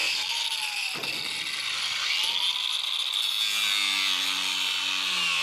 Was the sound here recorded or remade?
recorded